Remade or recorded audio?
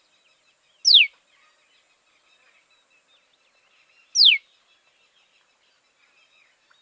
recorded